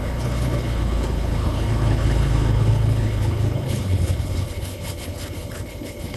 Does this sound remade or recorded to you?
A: remade